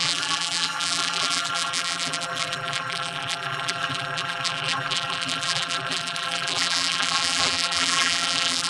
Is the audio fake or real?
fake